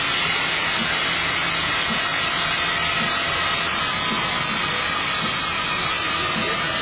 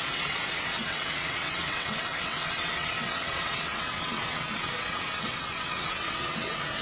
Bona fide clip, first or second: first